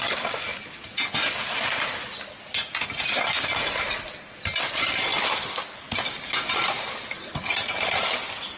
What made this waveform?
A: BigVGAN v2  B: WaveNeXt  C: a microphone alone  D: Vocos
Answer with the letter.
C